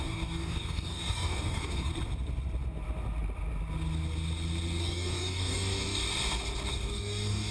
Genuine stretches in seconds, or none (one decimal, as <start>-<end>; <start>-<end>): 1.9-4.8; 6.0-6.7